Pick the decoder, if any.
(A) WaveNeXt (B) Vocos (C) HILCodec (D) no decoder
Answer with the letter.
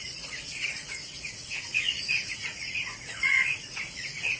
B